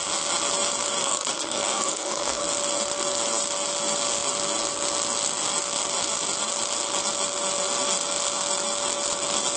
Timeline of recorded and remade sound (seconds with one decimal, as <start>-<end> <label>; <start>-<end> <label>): 0.0-1.0 recorded; 1.0-2.4 remade; 2.4-9.6 recorded

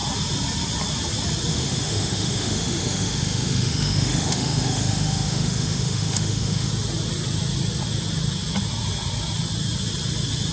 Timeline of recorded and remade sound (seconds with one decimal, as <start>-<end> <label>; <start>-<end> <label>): 0.0-1.5 recorded; 1.5-6.7 remade; 6.7-10.5 recorded

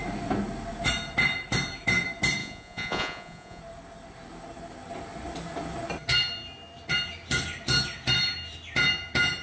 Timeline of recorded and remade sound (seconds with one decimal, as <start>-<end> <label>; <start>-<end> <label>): 0.0-2.4 recorded; 2.4-3.6 remade; 3.6-9.4 recorded

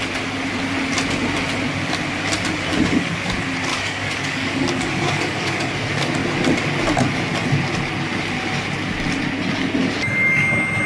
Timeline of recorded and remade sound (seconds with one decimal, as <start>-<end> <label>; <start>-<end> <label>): 0.0-2.7 recorded; 2.7-3.3 remade; 3.3-3.7 recorded; 3.7-5.7 remade; 5.7-10.9 recorded

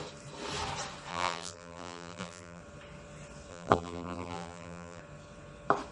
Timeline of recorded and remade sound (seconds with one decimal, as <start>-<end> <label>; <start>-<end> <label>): 0.0-1.1 recorded; 1.1-2.6 remade; 2.6-3.5 recorded; 3.5-5.0 remade; 5.0-5.9 recorded